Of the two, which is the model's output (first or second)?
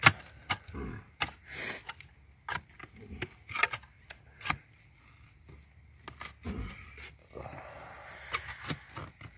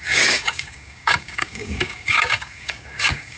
second